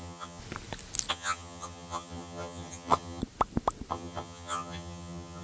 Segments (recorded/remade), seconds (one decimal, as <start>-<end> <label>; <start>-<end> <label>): 0.0-0.4 remade; 0.4-1.1 recorded; 1.1-3.2 remade; 3.2-3.9 recorded; 3.9-5.4 remade